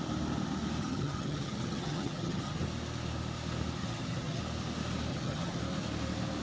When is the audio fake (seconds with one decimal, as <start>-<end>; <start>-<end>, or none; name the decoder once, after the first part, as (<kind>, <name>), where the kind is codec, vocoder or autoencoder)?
0.8-2.6 (vocoder, HiFi-GAN); 3.8-4.4; 5.1-5.6